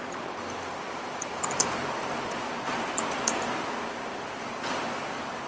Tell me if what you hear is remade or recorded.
remade